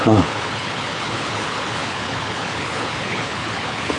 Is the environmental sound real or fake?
fake